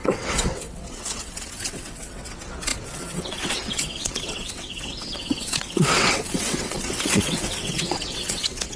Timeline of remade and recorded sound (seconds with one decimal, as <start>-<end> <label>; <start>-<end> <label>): 0.0-8.8 remade